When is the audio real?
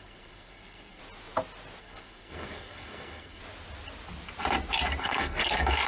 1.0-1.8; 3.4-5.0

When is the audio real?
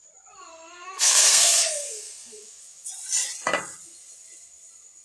0.0-0.5; 2.4-5.0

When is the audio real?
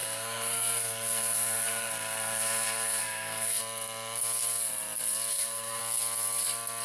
3.6-5.3; 5.8-6.8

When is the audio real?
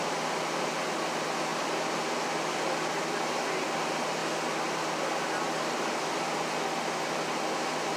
0.0-8.0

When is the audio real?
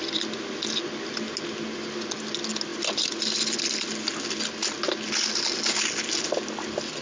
0.0-7.0